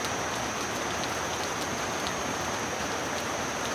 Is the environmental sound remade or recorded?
recorded